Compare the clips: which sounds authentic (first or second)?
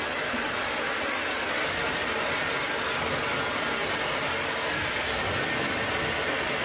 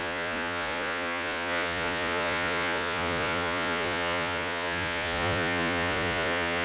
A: first